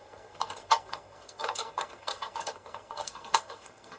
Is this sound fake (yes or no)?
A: yes